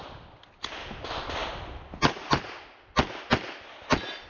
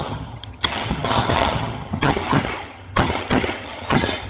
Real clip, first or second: first